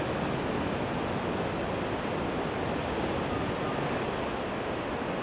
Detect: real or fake real